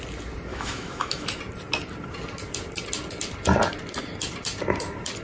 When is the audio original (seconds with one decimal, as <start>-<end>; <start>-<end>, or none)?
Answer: 0.0-0.5; 1.4-5.2